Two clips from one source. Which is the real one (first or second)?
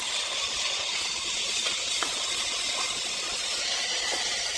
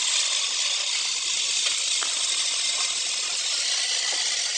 second